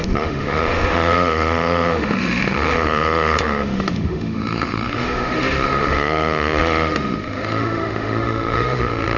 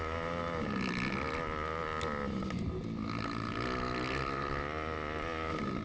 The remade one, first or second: first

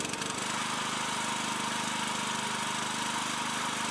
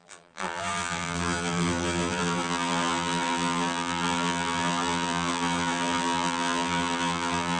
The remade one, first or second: second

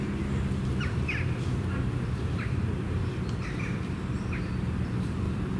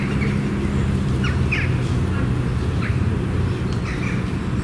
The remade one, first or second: first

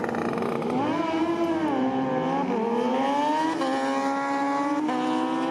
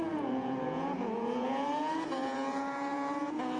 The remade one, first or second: second